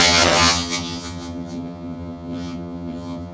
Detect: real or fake fake